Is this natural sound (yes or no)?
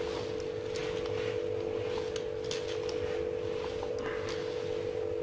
yes